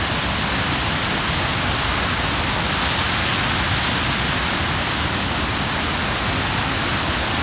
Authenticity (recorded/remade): recorded